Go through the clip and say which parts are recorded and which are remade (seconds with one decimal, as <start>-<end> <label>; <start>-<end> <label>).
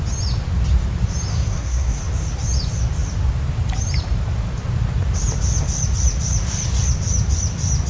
0.0-1.3 recorded; 1.3-2.0 remade; 2.0-7.9 recorded